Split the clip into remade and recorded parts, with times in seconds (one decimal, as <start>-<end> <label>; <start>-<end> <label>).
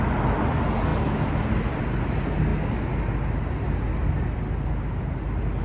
0.0-0.9 recorded; 0.9-1.8 remade; 1.8-5.6 recorded